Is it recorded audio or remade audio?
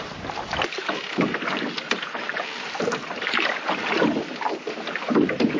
recorded